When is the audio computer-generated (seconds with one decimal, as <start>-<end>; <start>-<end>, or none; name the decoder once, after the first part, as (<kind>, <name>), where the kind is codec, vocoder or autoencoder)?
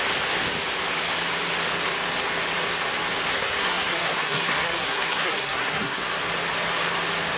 3.3-6.0 (codec, SNAC)